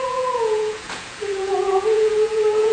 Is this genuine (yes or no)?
no